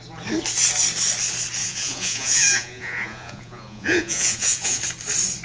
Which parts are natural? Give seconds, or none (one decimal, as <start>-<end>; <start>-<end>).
0.0-1.6; 4.8-5.4